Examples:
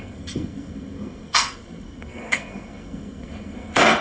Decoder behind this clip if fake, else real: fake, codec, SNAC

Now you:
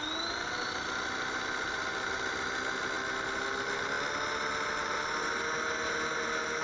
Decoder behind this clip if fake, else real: real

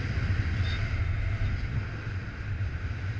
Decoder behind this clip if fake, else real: real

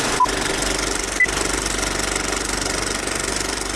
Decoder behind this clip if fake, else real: real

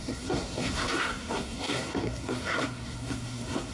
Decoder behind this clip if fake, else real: fake, codec, SNAC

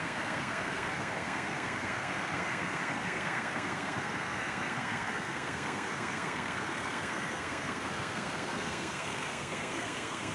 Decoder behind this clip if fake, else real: fake, codec, SNAC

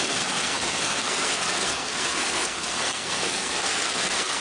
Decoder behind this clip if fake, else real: fake, codec, SNAC